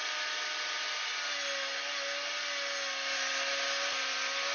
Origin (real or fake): real